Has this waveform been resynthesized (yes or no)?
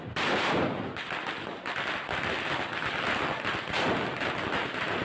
yes